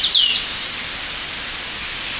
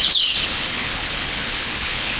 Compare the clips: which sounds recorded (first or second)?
first